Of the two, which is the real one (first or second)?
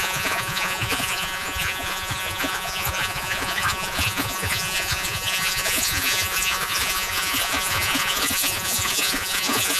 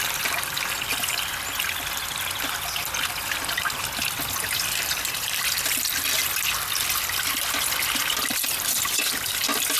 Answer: second